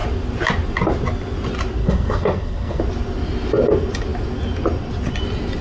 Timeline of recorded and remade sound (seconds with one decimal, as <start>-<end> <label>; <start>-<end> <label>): 0.0-1.8 recorded; 1.8-2.8 remade; 2.8-5.6 recorded